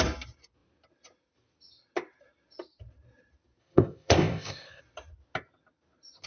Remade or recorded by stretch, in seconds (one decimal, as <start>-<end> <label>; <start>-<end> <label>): 0.0-3.6 recorded; 3.6-4.8 remade; 4.8-6.3 recorded